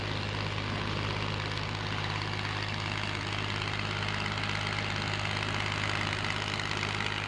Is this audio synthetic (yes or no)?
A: no